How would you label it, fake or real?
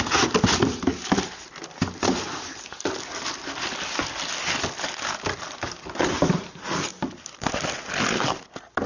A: real